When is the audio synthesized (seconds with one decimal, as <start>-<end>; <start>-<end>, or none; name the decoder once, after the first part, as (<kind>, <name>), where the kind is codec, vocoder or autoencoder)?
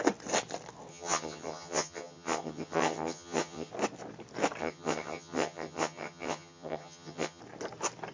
0.9-3.7 (vocoder, HiFi-GAN); 4.6-7.4